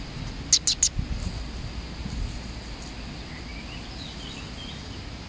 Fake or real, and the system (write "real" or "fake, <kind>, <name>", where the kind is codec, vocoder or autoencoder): real